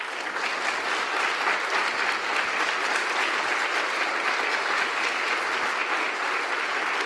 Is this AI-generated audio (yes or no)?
no